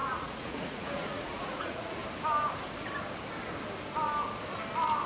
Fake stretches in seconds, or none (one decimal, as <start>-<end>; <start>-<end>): 0.0-2.0